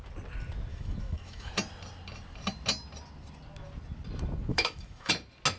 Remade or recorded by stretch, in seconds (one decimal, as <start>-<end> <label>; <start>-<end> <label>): 0.0-0.7 recorded; 0.7-1.5 remade; 1.5-4.5 recorded; 4.5-5.1 remade; 5.1-5.6 recorded